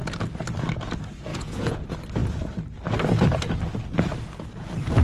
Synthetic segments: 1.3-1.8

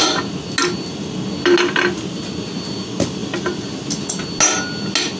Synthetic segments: none